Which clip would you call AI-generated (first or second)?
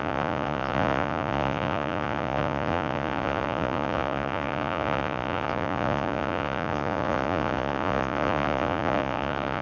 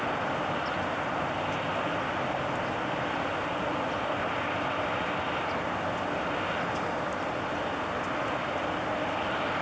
first